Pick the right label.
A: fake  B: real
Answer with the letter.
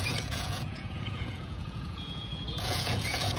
A